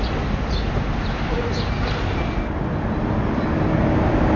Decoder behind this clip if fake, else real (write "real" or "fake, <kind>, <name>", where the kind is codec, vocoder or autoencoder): real